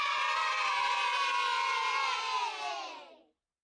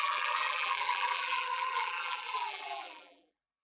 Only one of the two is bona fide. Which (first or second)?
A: first